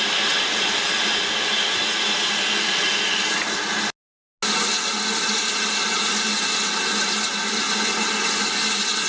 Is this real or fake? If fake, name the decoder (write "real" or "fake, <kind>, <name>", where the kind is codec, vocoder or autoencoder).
real